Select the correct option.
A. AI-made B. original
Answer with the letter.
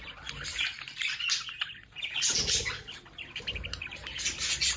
B